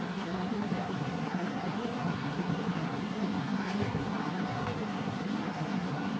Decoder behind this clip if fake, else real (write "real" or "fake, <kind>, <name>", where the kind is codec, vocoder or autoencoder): fake, codec, SNAC